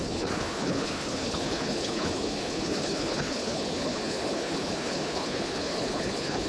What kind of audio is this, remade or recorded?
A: remade